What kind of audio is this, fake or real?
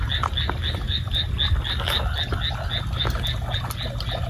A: real